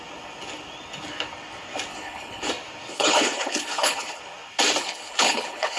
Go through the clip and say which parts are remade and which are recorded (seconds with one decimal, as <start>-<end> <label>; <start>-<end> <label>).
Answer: 0.0-1.9 recorded; 1.9-2.5 remade; 2.5-2.9 recorded; 2.9-4.2 remade; 4.2-4.8 recorded; 4.8-5.8 remade